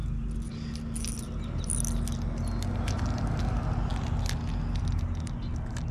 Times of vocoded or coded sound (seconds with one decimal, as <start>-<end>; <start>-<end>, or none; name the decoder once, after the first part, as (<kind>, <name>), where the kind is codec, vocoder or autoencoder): none